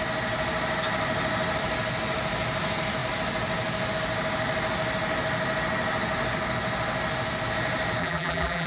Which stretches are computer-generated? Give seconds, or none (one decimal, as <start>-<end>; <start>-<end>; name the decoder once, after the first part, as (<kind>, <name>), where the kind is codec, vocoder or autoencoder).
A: 8.0-8.7 (vocoder, BigVGAN v2)